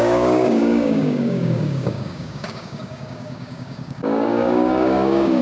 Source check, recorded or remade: remade